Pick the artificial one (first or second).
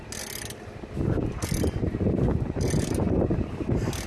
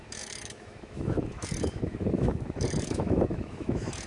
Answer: second